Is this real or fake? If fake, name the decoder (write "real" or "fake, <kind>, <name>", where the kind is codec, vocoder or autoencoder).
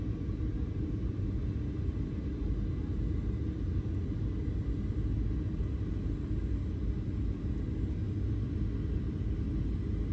real